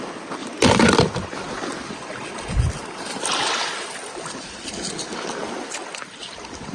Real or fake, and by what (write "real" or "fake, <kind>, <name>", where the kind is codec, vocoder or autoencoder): real